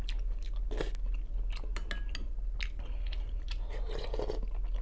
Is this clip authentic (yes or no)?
yes